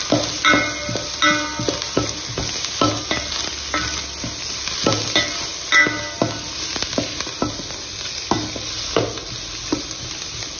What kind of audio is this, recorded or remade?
recorded